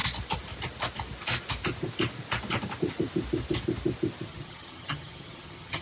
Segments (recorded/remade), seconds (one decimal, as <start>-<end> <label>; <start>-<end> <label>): 0.0-4.3 recorded; 4.3-5.8 remade